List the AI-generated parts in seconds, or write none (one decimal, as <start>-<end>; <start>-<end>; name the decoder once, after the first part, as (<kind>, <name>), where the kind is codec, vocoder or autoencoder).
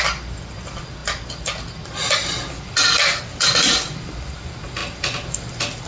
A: none